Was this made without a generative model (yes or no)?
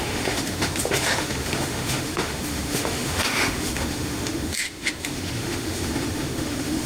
no